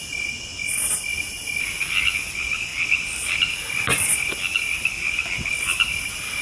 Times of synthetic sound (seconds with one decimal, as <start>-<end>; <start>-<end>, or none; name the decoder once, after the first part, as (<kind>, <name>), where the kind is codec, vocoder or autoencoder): 0.5-1.9 (vocoder, BigVGAN v2); 2.7-6.4